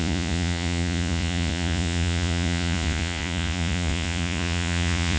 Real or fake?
fake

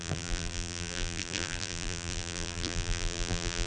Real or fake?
fake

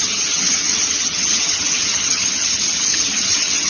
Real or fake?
fake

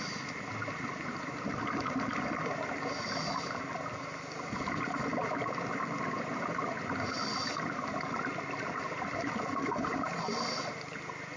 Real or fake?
real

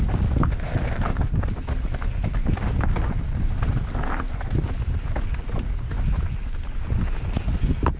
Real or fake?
real